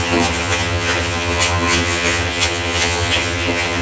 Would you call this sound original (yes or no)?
no